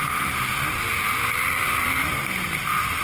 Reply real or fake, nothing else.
fake